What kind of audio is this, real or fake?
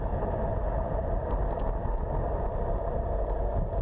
real